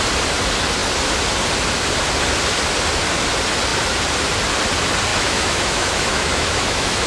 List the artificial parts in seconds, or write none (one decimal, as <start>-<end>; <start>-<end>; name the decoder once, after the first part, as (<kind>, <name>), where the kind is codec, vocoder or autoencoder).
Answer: 5.1-7.1 (autoencoder, DAC-VAE)